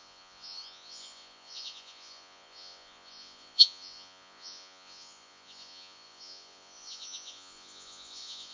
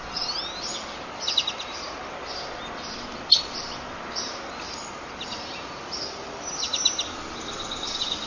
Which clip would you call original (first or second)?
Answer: second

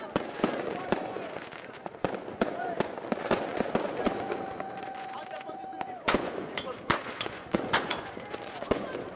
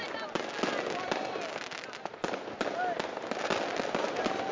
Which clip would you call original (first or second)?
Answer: second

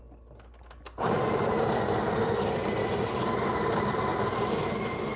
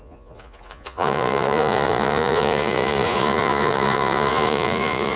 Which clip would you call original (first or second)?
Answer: first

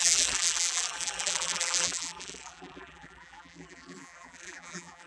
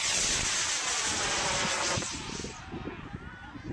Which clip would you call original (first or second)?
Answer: second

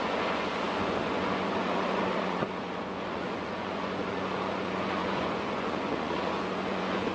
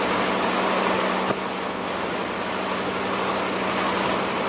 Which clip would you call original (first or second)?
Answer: second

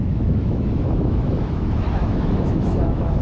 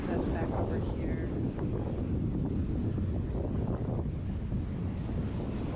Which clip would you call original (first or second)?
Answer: second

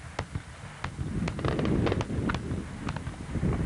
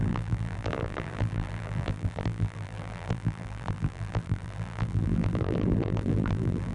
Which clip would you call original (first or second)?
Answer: first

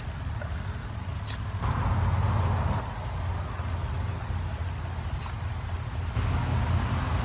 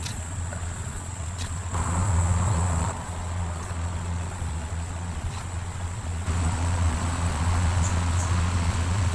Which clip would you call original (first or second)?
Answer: first